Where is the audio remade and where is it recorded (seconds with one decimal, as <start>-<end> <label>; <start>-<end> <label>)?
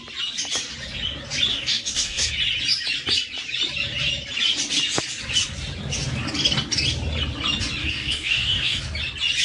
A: 0.0-1.5 recorded; 1.5-2.3 remade; 2.3-7.8 recorded; 7.8-8.8 remade; 8.8-9.4 recorded